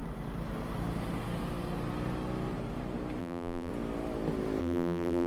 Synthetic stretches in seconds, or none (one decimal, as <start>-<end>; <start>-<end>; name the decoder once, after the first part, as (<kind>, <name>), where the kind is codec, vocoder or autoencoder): 3.2-3.7 (vocoder, BigVGAN v2); 4.6-5.3